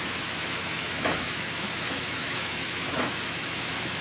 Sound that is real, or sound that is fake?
fake